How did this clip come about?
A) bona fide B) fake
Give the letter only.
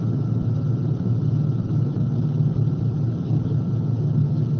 A